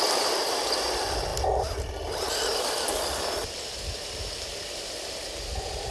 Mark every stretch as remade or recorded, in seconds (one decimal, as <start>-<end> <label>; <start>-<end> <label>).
0.0-5.9 recorded